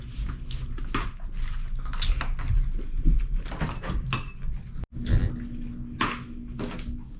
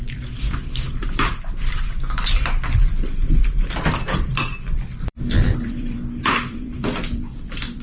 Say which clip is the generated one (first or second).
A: second